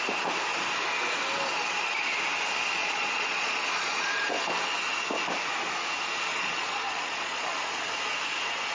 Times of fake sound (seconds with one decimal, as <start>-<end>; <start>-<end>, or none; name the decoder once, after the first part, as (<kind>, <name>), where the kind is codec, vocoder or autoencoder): 2.8-4.3 (vocoder, Vocos); 6.3-7.5